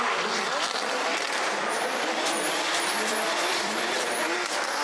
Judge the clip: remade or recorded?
remade